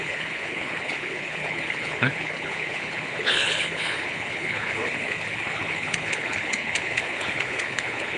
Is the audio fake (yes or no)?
yes